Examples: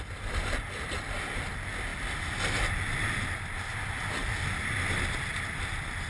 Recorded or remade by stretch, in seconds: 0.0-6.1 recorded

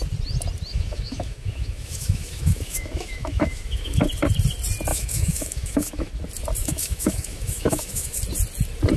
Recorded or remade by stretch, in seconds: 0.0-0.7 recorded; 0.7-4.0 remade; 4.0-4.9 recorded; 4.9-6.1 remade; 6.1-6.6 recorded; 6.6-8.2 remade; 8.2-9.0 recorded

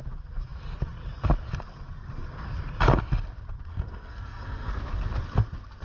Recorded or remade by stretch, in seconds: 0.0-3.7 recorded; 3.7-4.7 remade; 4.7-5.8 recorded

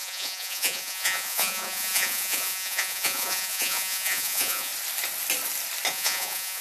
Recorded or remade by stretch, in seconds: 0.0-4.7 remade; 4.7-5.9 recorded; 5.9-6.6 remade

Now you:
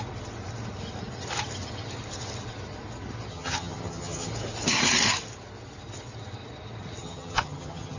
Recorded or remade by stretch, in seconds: 0.0-3.3 recorded; 3.3-4.3 remade; 4.3-7.0 recorded; 7.0-8.0 remade